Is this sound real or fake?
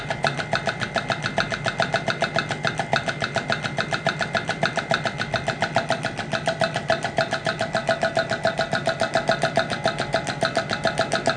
real